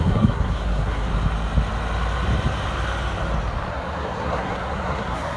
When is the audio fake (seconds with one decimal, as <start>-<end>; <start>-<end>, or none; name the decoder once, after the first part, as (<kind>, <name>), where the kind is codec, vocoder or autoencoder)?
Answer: 0.0-1.1 (codec, SNAC); 3.7-5.4